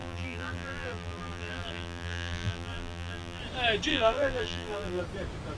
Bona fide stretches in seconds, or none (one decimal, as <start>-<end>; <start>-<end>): 3.4-3.9; 5.0-5.6